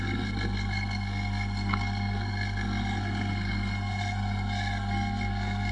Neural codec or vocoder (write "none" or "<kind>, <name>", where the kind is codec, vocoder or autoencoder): codec, SNAC